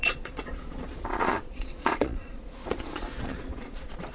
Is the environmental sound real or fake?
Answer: fake